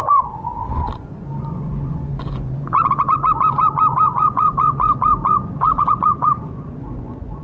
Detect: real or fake fake